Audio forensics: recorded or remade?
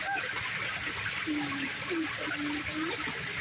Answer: recorded